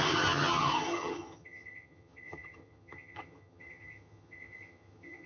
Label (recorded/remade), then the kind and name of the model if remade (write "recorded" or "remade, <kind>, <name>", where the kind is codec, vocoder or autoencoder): remade, vocoder, HiFi-GAN